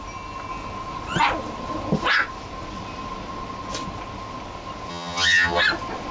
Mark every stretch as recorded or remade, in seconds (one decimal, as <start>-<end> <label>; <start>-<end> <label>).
0.0-4.9 recorded; 4.9-5.6 remade; 5.6-6.1 recorded